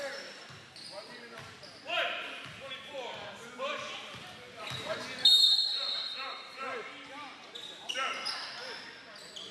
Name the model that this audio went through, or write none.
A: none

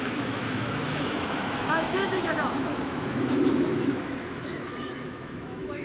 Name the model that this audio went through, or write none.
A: autoencoder, DAC-VAE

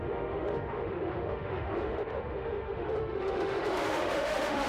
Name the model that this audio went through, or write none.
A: autoencoder, DAC-VAE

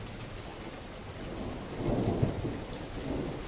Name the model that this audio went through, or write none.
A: none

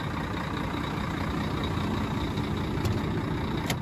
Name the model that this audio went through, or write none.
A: none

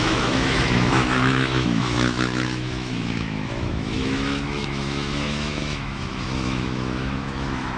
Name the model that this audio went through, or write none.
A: autoencoder, DAC-VAE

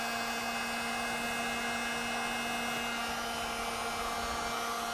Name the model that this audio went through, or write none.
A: none